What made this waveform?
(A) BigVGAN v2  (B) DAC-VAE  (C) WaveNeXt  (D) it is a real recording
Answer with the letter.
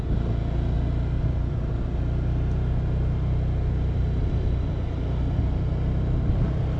D